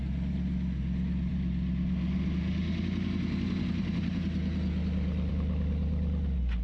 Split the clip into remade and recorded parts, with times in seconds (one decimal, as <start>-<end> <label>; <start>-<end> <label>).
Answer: 0.0-6.6 recorded

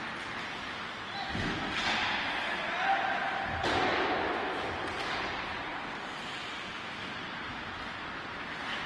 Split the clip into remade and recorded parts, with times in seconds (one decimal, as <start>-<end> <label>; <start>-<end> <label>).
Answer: 0.0-8.9 recorded

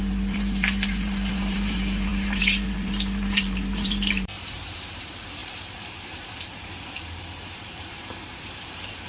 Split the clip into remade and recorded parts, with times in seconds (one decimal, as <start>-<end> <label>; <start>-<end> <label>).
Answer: 0.0-9.1 remade